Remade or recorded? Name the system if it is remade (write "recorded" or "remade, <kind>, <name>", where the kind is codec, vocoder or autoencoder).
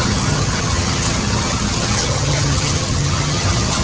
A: remade, vocoder, HiFi-GAN